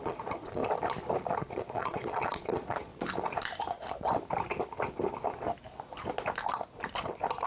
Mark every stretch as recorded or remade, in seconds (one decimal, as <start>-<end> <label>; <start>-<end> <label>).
0.0-0.6 remade; 0.6-1.5 recorded; 1.5-2.9 remade; 2.9-7.5 recorded